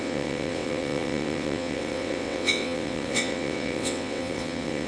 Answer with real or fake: fake